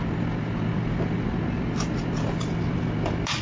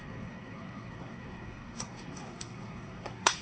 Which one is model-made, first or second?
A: second